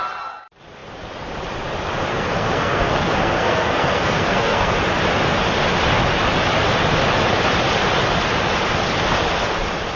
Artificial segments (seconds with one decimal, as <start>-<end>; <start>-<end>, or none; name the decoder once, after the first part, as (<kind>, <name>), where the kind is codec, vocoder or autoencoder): 2.1-4.7 (codec, SNAC)